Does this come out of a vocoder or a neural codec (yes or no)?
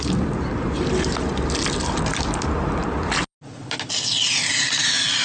no